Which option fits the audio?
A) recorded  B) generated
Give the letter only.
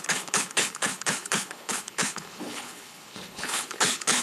B